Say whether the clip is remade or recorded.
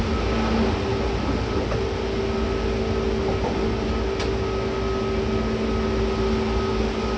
recorded